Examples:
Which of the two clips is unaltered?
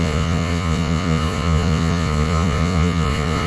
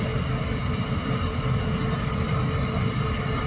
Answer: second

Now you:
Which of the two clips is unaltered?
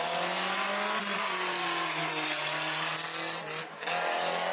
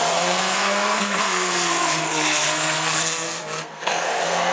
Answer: first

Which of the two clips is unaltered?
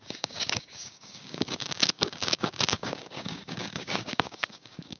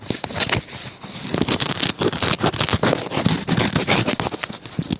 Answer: second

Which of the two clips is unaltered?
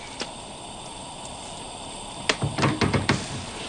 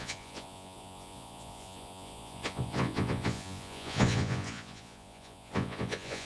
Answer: first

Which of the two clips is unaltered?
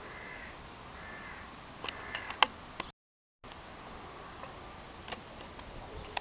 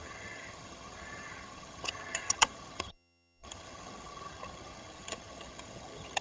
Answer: first